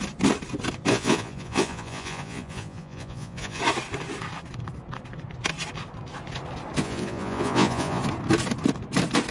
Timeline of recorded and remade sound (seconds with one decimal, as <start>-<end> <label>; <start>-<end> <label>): 0.0-0.9 recorded; 0.9-3.6 remade; 3.6-6.8 recorded; 6.8-8.0 remade; 8.0-9.3 recorded